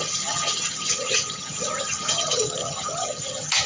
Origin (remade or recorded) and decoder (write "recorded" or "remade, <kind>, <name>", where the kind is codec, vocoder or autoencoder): remade, vocoder, HiFi-GAN